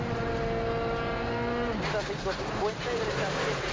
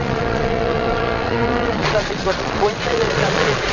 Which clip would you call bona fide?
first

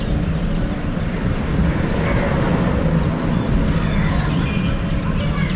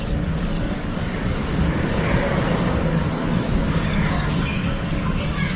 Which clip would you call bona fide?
first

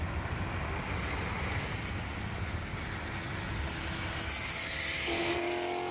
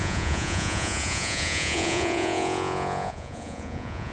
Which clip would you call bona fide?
first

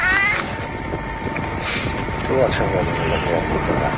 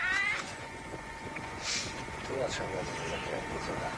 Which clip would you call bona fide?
first